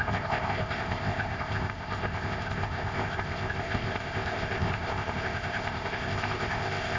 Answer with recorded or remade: remade